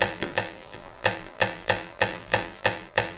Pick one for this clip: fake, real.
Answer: fake